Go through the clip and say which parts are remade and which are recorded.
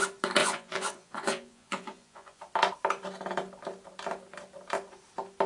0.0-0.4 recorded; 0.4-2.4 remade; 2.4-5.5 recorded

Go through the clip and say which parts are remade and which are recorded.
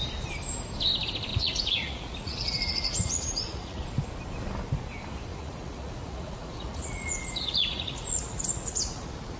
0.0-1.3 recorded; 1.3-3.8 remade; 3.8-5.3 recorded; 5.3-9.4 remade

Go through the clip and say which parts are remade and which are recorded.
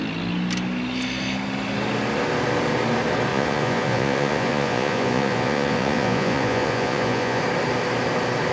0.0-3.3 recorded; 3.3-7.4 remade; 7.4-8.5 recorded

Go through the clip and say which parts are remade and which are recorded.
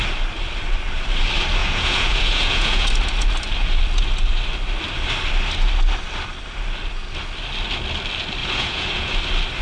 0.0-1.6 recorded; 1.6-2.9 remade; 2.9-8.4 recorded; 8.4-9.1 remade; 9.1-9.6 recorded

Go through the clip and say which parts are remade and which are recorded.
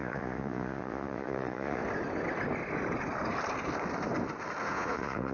0.0-1.8 remade; 1.8-4.6 recorded; 4.6-5.3 remade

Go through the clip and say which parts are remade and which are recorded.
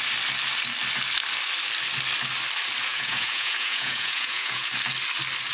0.0-2.9 recorded; 2.9-4.7 remade; 4.7-5.5 recorded